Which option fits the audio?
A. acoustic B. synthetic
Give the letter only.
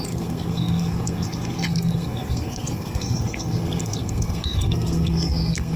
B